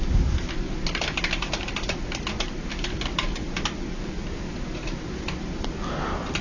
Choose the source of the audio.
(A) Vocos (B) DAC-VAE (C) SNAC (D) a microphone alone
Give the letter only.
D